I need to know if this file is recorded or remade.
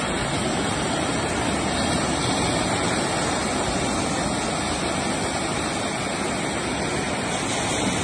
recorded